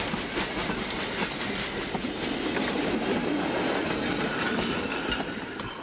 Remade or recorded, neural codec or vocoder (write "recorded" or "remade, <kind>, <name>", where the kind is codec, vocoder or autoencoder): recorded